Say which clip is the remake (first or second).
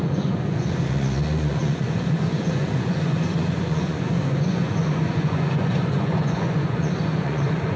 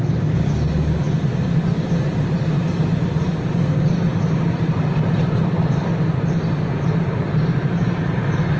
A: first